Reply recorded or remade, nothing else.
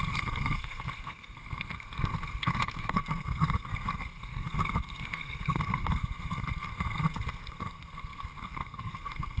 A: remade